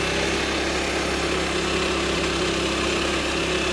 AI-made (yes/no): no